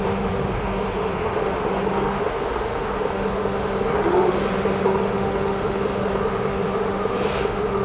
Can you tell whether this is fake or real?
fake